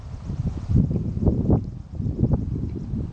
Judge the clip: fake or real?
real